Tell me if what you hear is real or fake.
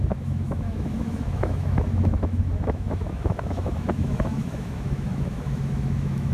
fake